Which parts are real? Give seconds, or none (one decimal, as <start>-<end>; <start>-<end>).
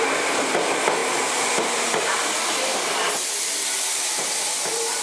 1.0-4.0